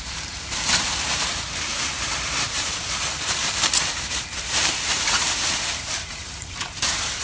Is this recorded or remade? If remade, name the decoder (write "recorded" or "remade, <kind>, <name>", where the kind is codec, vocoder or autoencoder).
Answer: remade, vocoder, BigVGAN v2